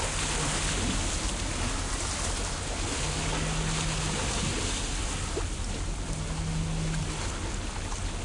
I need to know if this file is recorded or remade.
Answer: recorded